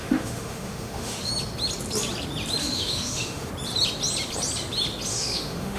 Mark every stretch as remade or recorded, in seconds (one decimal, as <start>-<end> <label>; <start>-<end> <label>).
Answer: 0.0-1.3 remade; 1.3-2.6 recorded; 2.6-3.5 remade; 3.5-5.1 recorded; 5.1-5.8 remade